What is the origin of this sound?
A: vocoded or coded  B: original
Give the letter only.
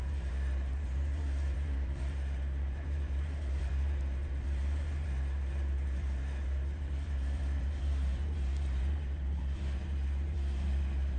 A